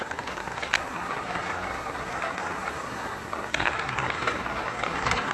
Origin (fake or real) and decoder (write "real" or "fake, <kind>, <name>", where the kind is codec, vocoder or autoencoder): fake, codec, SNAC